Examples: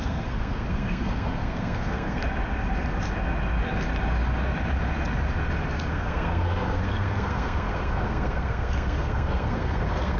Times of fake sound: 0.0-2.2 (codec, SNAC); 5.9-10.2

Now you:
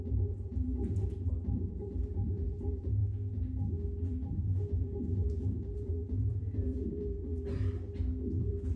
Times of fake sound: 0.0-3.0 (vocoder, BigVGAN v2); 4.0-7.6; 8.4-8.8